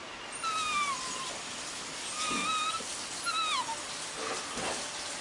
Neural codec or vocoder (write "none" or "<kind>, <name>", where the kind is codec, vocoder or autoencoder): none